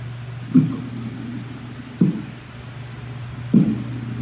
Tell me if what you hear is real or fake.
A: real